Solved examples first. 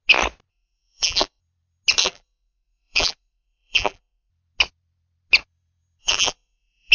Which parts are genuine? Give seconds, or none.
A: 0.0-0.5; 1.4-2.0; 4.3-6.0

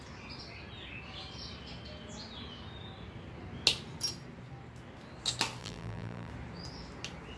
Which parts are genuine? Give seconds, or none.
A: 0.0-5.6; 6.3-7.4

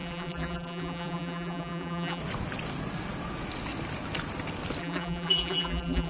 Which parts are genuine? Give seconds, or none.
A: 2.2-4.8